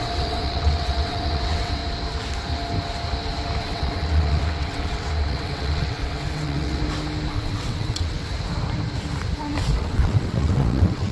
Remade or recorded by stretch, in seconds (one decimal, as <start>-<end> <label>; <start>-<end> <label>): 0.0-1.8 remade; 1.8-3.6 recorded; 3.6-6.8 remade; 6.8-7.3 recorded; 7.3-8.3 remade; 8.3-9.8 recorded; 9.8-11.1 remade